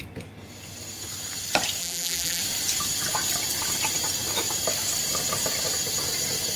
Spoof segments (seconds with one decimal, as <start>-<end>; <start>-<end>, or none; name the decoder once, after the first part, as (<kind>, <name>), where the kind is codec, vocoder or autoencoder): 1.8-2.4 (vocoder, BigVGAN v2)